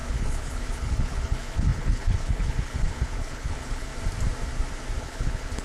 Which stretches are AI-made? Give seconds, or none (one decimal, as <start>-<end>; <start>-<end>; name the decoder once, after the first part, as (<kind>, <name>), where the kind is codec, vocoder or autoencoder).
0.0-3.9 (codec, HILCodec); 5.0-5.6